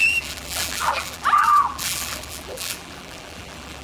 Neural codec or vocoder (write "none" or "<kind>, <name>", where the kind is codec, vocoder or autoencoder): vocoder, BigVGAN v2